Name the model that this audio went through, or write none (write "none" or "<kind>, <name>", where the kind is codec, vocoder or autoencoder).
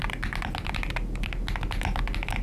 none